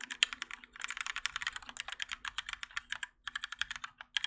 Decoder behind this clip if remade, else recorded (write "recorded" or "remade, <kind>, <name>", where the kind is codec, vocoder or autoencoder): recorded